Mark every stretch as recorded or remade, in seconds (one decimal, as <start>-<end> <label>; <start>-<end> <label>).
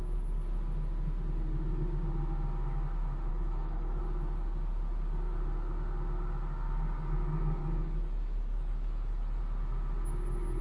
0.0-3.3 recorded; 3.3-4.0 remade; 4.0-7.6 recorded; 7.6-9.4 remade; 9.4-10.6 recorded